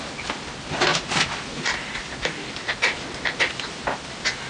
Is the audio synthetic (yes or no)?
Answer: no